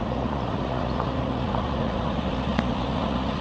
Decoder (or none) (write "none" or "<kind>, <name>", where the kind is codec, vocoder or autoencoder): vocoder, Vocos